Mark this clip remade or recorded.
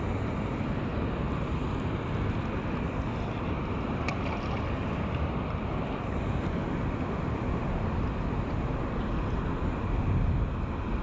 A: recorded